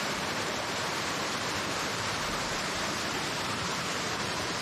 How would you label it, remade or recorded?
remade